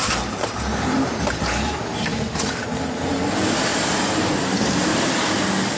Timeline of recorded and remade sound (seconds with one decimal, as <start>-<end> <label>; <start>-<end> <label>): 0.0-1.1 remade; 1.1-2.1 recorded; 2.1-3.2 remade; 3.2-3.7 recorded; 3.7-5.3 remade; 5.3-5.8 recorded